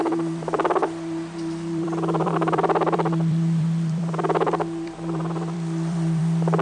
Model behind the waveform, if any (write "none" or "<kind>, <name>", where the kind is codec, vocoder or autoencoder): vocoder, BigVGAN v2